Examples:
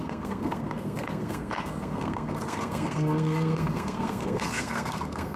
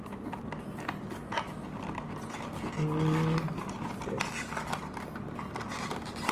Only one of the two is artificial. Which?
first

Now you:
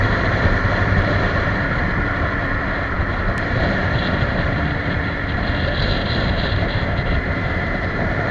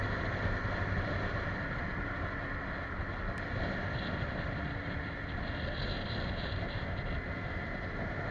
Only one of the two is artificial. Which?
first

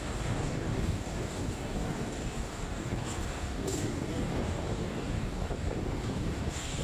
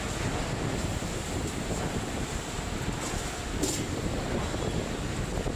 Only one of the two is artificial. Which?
first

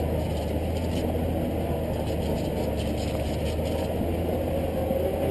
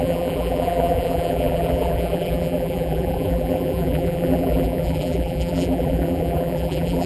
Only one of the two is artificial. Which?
second